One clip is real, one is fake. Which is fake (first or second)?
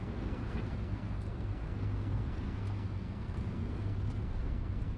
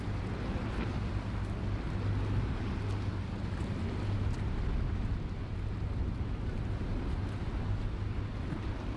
first